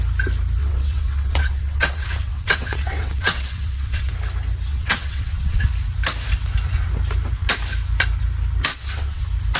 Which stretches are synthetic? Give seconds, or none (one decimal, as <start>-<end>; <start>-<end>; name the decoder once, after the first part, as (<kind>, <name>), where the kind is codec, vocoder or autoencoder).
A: 0.6-4.1 (vocoder, WaveNeXt); 4.7-5.7; 8.7-9.2